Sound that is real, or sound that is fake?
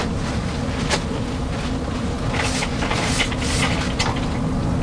real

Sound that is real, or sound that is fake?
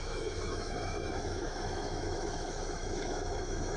fake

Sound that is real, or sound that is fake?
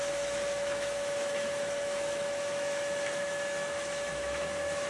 fake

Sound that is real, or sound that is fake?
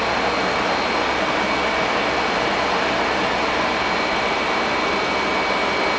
real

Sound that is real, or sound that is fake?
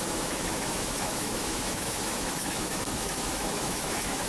fake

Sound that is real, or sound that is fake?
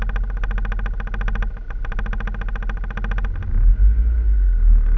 real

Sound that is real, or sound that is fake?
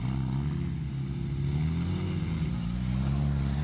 real